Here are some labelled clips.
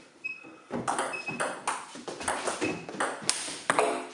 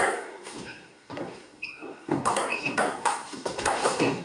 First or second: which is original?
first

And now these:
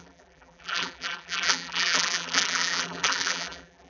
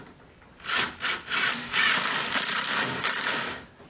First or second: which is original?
second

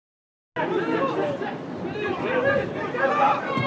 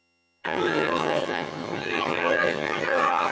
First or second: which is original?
first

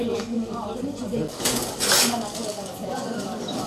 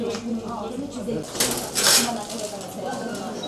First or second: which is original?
second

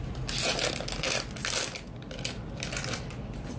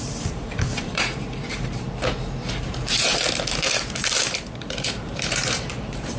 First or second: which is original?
first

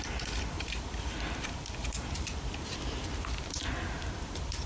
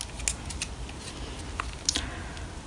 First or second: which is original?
second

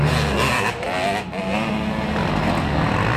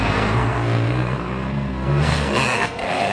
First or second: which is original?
first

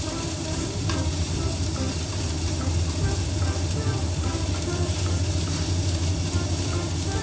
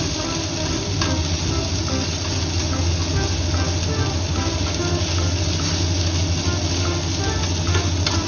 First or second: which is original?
second